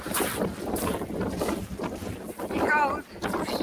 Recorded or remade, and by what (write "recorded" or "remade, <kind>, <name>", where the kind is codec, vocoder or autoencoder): recorded